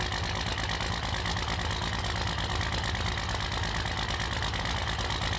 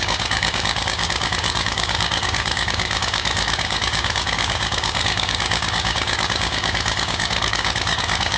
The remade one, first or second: second